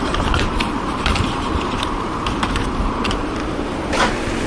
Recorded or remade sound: remade